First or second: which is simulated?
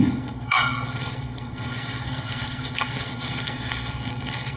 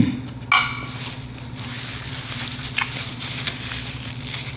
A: first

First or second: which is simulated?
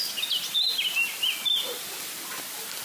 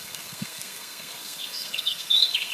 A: second